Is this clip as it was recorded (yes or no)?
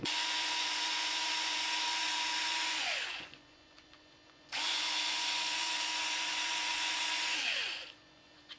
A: no